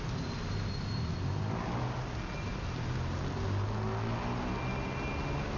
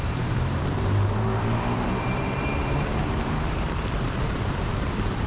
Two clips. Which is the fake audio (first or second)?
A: second